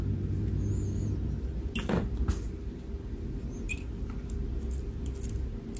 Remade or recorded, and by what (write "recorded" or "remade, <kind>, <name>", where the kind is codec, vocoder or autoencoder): recorded